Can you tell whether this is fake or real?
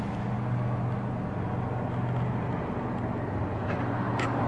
real